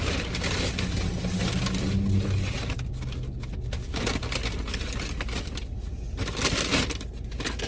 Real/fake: real